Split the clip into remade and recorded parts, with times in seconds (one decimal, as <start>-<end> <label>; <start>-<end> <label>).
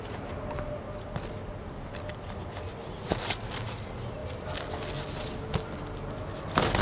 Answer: 0.0-6.8 recorded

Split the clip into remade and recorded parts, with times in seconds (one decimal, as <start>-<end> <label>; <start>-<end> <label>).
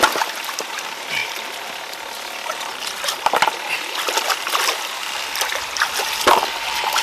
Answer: 0.0-7.0 recorded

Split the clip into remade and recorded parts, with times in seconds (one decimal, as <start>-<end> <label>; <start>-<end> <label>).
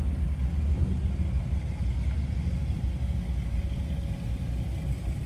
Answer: 0.0-5.3 recorded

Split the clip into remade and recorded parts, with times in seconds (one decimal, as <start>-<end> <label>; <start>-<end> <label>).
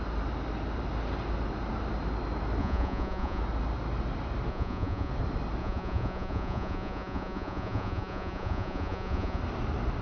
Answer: 0.0-2.6 recorded; 2.6-3.4 remade; 3.4-4.5 recorded; 4.5-5.1 remade; 5.1-5.6 recorded; 5.6-9.4 remade; 9.4-10.0 recorded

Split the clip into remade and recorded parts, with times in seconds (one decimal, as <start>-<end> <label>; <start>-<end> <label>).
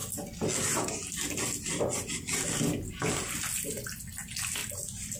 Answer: 0.0-5.2 recorded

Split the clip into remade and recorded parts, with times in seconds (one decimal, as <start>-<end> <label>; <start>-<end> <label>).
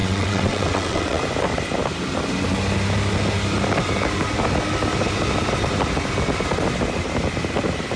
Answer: 0.0-1.2 remade; 1.2-8.0 recorded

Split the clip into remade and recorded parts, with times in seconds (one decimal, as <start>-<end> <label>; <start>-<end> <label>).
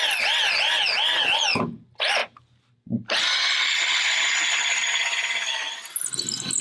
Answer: 0.0-2.2 recorded; 2.2-4.2 remade; 4.2-6.6 recorded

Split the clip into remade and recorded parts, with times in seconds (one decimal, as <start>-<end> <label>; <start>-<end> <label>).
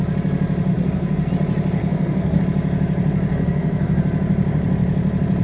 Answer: 0.0-0.7 recorded; 0.7-1.3 remade; 1.3-1.8 recorded; 1.8-2.4 remade; 2.4-3.3 recorded; 3.3-4.0 remade; 4.0-5.4 recorded